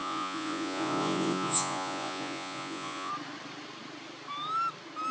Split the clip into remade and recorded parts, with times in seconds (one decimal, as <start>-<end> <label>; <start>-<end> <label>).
0.0-3.1 remade; 3.1-5.1 recorded